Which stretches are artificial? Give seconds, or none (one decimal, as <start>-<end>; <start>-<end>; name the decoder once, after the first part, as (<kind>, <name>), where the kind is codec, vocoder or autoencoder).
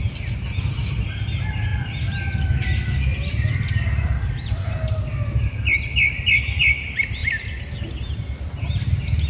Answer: none